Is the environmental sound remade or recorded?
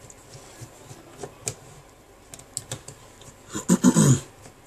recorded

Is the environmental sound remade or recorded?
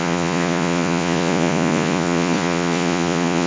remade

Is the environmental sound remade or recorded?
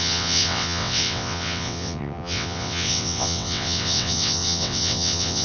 remade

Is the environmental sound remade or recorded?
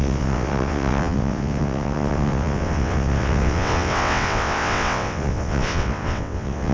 remade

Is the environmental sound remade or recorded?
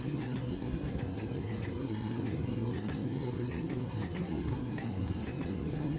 remade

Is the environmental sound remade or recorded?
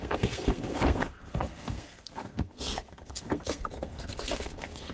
remade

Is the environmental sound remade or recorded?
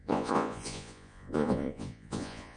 remade